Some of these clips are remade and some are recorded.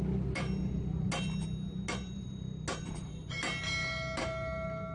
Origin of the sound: recorded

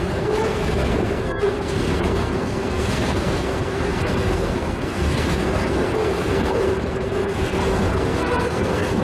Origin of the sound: remade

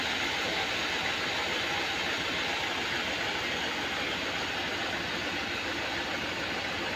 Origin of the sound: recorded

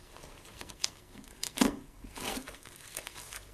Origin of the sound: remade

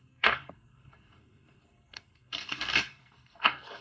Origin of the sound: remade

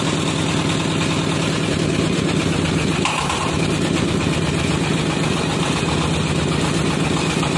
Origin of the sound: recorded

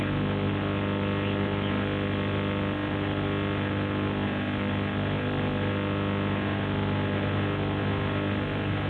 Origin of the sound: recorded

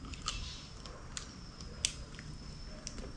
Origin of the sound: recorded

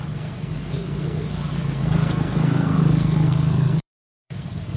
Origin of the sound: remade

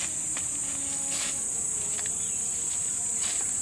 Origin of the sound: recorded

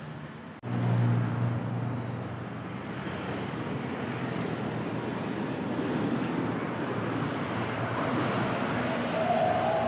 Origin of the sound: recorded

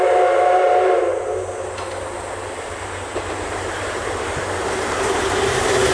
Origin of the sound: recorded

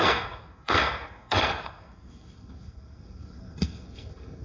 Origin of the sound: remade